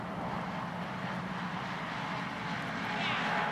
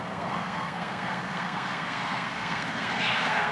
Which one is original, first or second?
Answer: first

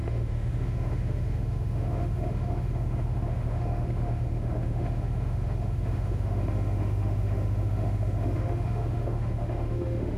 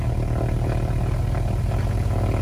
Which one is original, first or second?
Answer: second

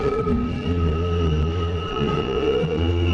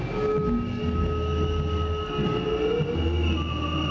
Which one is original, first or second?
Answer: second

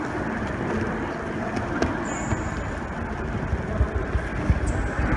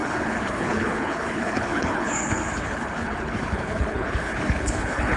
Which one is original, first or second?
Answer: first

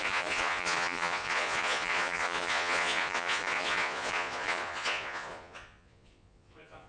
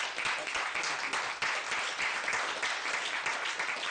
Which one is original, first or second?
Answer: second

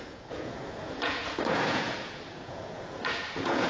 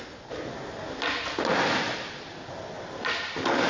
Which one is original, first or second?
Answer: second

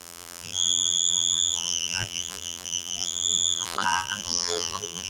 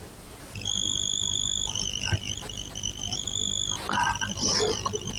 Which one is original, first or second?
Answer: second